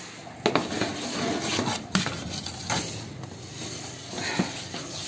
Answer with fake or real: real